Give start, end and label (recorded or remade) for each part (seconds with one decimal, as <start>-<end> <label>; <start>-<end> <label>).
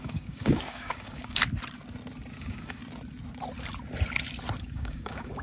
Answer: 0.0-1.4 remade; 1.4-2.4 recorded; 2.4-2.8 remade; 2.8-4.6 recorded; 4.6-5.4 remade